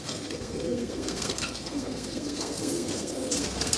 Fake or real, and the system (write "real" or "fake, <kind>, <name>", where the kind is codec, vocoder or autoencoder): fake, codec, SNAC